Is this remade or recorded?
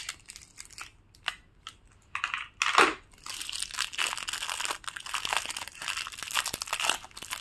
recorded